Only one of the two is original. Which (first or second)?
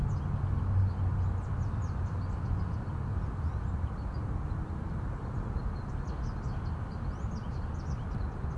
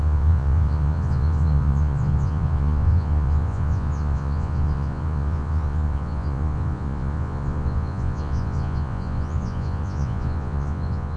first